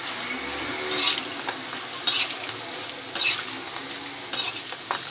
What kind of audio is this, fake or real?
real